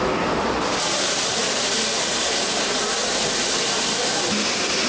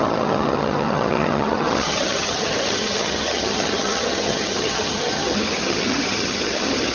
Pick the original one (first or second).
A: first